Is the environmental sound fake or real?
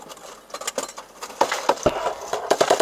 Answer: fake